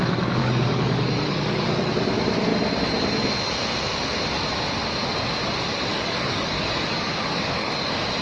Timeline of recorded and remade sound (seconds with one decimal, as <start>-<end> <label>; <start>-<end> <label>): 0.0-0.4 recorded; 0.4-1.9 remade; 1.9-5.9 recorded; 5.9-7.7 remade; 7.7-8.2 recorded